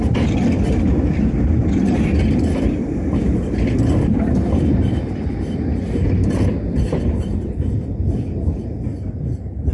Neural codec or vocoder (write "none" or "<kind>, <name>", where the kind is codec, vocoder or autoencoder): none